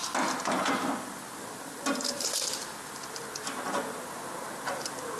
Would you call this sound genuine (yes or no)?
yes